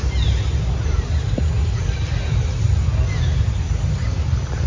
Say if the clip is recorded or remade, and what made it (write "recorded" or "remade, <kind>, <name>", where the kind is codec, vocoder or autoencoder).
recorded